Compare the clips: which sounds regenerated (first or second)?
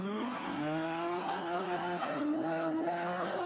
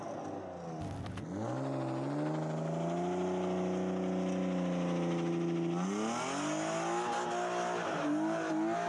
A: first